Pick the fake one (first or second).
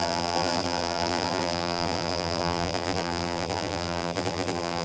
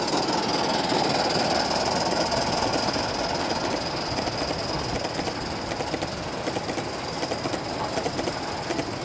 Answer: first